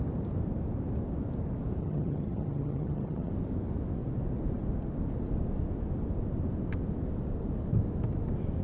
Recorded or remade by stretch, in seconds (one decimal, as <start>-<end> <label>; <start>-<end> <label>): 0.0-1.8 recorded; 1.8-3.3 remade; 3.3-8.6 recorded